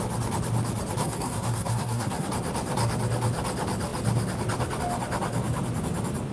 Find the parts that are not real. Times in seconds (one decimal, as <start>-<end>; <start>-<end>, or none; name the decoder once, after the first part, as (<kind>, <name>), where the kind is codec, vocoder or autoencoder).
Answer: 1.0-2.3 (codec, SNAC)